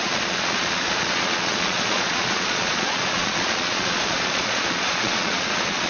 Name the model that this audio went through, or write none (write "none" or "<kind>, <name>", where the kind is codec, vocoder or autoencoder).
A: vocoder, Vocos